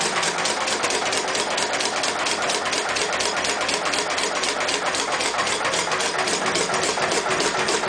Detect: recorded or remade recorded